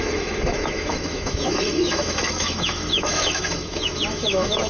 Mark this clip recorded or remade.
remade